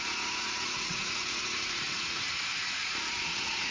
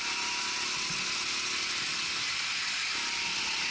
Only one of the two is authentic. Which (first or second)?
second